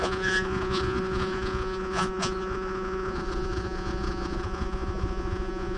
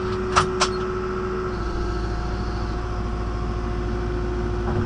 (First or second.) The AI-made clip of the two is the first